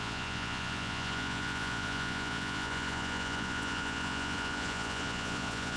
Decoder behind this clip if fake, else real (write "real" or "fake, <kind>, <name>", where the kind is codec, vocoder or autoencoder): fake, vocoder, Vocos